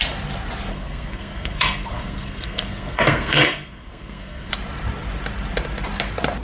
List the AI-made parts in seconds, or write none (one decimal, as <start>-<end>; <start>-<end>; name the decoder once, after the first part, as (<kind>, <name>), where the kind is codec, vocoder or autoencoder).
0.7-4.5 (codec, SNAC)